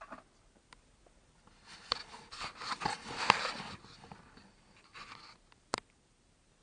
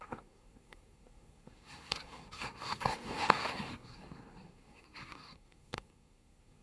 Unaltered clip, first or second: first